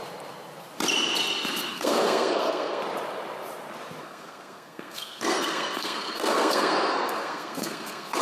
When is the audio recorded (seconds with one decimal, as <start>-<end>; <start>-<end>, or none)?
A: 0.0-1.7; 2.8-4.0